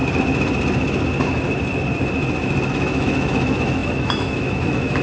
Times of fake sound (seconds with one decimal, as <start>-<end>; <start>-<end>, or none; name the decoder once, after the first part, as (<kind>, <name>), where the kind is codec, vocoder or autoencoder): 2.7-5.0 (autoencoder, DAC-VAE)

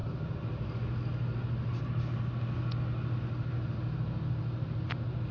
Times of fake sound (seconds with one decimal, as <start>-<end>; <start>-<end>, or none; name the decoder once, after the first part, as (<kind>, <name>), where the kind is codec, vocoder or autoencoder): none

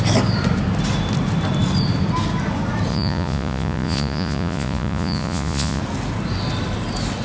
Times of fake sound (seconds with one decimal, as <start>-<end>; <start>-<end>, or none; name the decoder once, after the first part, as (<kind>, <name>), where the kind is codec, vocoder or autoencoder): 2.9-5.8 (vocoder, Vocos)

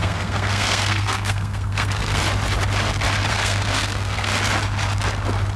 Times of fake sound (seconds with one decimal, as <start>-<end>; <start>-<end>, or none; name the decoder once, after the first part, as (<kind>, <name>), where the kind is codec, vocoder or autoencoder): 0.0-2.2 (codec, SNAC); 3.3-4.3

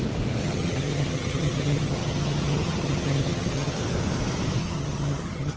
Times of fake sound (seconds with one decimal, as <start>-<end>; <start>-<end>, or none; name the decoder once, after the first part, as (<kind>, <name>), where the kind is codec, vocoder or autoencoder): 0.4-3.8 (vocoder, HiFi-GAN); 4.6-5.6

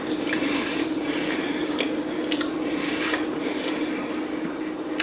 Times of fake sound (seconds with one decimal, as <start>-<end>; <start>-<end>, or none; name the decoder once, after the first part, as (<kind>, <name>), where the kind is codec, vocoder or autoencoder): 0.0-1.6 (vocoder, BigVGAN v2); 4.6-5.0